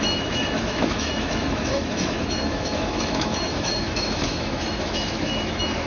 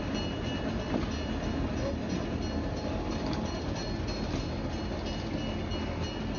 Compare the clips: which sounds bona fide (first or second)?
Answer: second